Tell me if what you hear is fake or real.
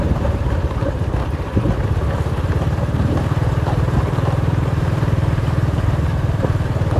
fake